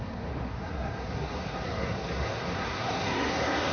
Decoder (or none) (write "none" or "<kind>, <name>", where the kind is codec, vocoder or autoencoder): codec, SNAC